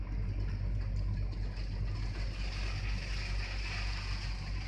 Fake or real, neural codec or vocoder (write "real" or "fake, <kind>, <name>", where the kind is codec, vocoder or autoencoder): real